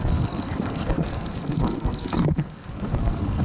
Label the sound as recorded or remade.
remade